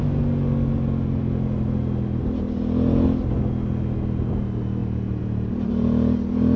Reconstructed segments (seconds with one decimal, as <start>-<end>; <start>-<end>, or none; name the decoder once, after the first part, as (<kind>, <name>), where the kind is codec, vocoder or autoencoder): none